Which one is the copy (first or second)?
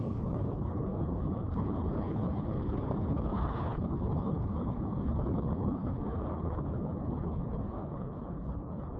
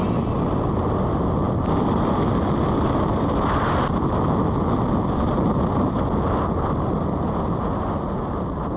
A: first